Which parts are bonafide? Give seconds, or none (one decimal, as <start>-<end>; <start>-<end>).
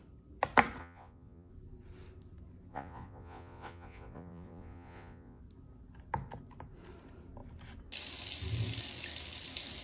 0.0-0.8; 1.5-2.7; 5.4-9.8